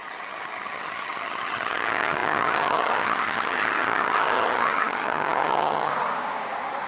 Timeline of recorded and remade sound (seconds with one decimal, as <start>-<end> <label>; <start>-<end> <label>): 0.0-5.9 remade; 5.9-6.9 recorded